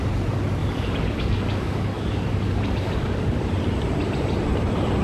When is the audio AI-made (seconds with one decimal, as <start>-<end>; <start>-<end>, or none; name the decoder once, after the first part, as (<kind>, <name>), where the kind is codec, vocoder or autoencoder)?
0.6-3.5 (codec, DAC)